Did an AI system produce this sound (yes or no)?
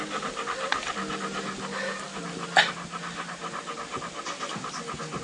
no